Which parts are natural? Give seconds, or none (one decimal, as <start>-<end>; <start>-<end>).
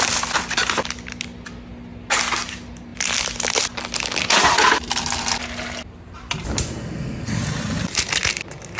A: 0.0-6.8; 7.4-8.8